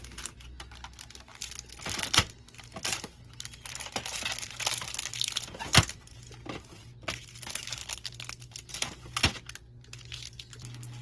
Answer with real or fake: real